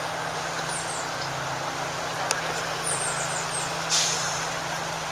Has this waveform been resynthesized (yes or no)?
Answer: no